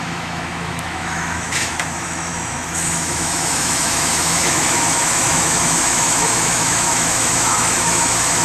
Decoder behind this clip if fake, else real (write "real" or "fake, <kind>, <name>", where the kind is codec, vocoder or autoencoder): fake, autoencoder, DAC-VAE